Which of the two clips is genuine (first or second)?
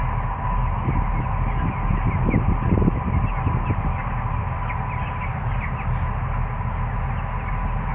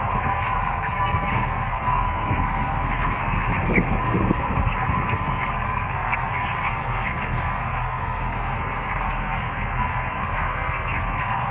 first